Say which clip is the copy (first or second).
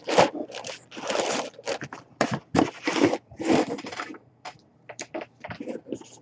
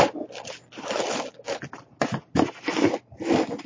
first